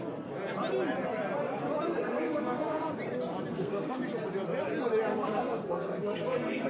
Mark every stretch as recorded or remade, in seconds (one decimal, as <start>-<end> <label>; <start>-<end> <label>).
0.0-1.9 recorded; 1.9-2.9 remade; 2.9-3.5 recorded; 3.5-4.0 remade; 4.0-5.1 recorded; 5.1-6.7 remade